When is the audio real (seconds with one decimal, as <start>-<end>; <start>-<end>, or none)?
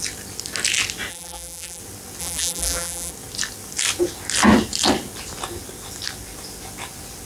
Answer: 0.0-1.1; 1.8-2.2; 3.1-7.3